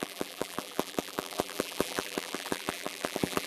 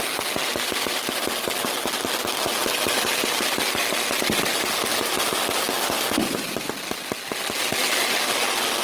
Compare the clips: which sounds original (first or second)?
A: second